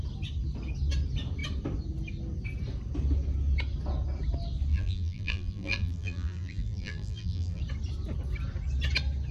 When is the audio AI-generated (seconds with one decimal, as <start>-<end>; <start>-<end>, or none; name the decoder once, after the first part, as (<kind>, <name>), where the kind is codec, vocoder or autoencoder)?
4.7-7.6 (vocoder, BigVGAN v2)